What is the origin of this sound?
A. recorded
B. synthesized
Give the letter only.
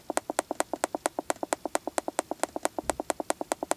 A